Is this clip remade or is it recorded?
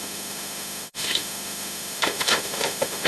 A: remade